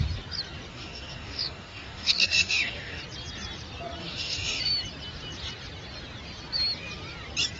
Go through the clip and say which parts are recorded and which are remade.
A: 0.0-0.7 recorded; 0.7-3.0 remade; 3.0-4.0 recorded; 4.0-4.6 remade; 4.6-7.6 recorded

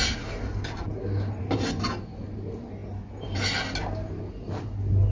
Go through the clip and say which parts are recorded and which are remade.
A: 0.0-5.1 recorded

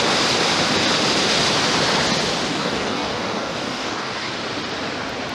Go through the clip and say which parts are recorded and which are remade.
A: 0.0-2.5 recorded; 2.5-4.3 remade; 4.3-5.3 recorded

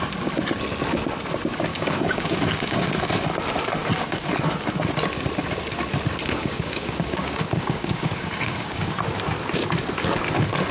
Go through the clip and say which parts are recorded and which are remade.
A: 0.0-1.7 recorded; 1.7-3.0 remade; 3.0-6.4 recorded; 6.4-9.0 remade; 9.0-10.7 recorded

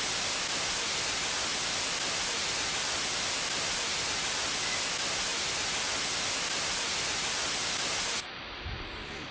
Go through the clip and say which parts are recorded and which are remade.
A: 0.0-9.3 recorded

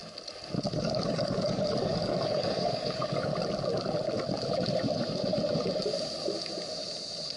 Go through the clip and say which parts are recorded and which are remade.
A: 0.0-0.8 recorded; 0.8-3.3 remade; 3.3-7.4 recorded

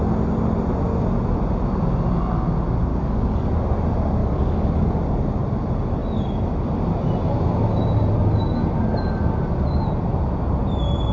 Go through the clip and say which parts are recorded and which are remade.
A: 0.0-2.9 recorded; 2.9-3.4 remade; 3.4-4.2 recorded; 4.2-5.0 remade; 5.0-11.1 recorded

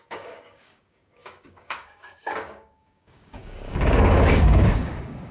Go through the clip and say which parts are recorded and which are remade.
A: 0.0-5.3 remade